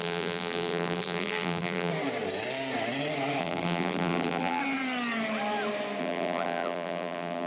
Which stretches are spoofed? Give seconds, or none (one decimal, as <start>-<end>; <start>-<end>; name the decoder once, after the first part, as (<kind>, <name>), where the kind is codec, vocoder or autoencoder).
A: 0.0-1.9 (vocoder, BigVGAN v2); 3.4-4.6; 6.0-7.5